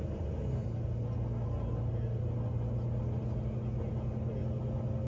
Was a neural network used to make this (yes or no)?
no